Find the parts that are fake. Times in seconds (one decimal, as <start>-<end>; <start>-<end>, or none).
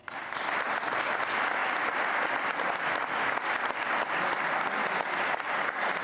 none